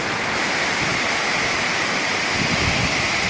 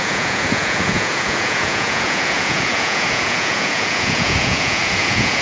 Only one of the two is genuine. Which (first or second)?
first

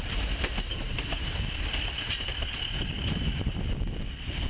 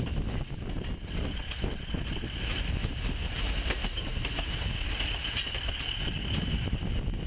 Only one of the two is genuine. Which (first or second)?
second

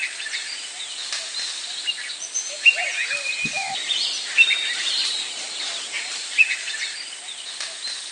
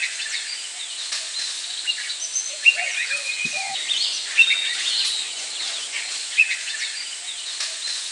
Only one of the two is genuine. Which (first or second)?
first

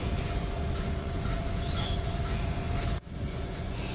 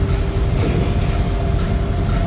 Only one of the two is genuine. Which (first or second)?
second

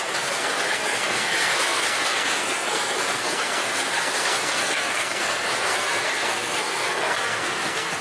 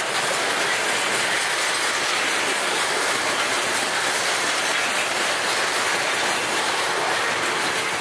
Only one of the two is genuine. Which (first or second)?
second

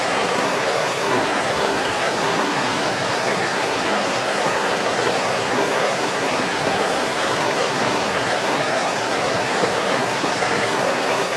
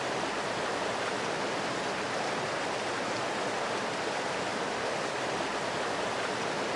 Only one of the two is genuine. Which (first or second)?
second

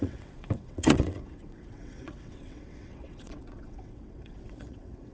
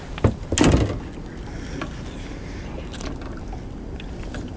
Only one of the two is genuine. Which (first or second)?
second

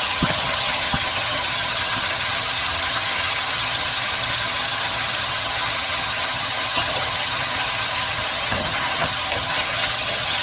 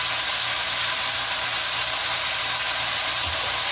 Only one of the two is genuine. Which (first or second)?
second